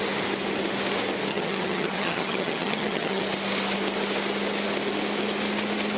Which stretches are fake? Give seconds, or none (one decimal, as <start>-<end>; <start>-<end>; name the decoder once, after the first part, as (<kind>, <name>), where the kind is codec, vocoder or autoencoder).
1.3-3.2 (vocoder, HiFi-GAN)